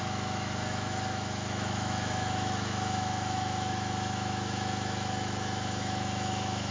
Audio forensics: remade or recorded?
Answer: remade